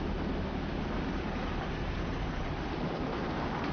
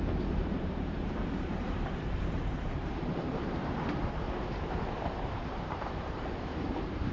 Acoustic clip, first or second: first